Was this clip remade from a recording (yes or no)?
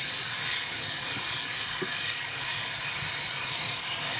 yes